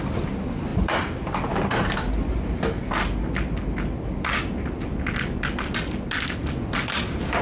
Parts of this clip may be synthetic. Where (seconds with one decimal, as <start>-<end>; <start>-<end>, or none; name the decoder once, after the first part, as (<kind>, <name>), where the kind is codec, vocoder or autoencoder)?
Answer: 0.7-1.3 (vocoder, BigVGAN v2)